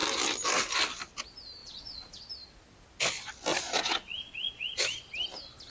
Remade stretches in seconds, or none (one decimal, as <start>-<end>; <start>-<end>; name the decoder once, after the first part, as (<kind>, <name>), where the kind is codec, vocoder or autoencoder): 1.6-2.2 (vocoder, Vocos); 3.5-4.8